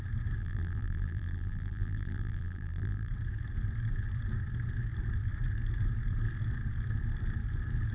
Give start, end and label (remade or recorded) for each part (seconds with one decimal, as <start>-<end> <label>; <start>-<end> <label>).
0.0-0.4 recorded; 0.4-3.1 remade; 3.1-7.9 recorded